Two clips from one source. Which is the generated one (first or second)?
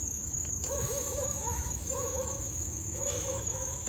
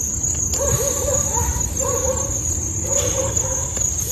first